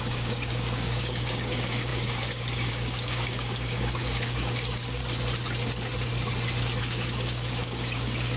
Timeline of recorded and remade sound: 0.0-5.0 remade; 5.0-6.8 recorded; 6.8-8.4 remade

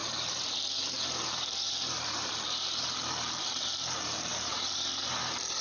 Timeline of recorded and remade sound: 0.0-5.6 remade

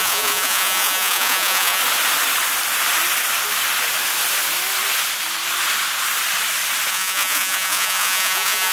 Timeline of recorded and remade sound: 0.0-1.8 remade; 1.8-6.9 recorded; 6.9-8.7 remade

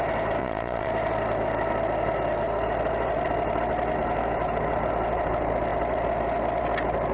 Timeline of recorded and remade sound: 0.0-0.4 recorded; 0.4-0.9 remade; 0.9-7.1 recorded

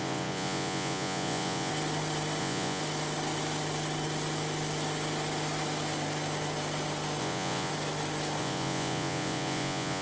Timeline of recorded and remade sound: 0.0-1.7 remade; 1.7-2.4 recorded; 2.4-2.8 remade; 2.8-7.2 recorded; 7.2-7.7 remade; 7.7-8.4 recorded; 8.4-10.0 remade

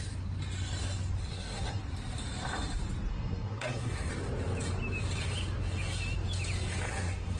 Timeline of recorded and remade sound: 0.0-1.2 recorded; 1.2-1.8 remade; 1.8-3.1 recorded; 3.1-4.1 remade; 4.1-6.9 recorded; 6.9-7.4 remade